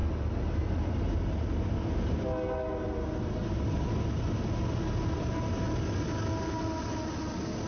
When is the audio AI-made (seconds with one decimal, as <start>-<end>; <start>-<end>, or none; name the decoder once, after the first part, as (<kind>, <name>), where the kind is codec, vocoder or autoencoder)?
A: none